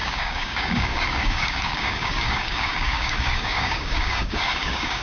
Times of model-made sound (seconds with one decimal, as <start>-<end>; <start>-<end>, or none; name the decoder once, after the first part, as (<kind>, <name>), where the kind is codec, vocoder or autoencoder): 0.0-5.0 (codec, DAC)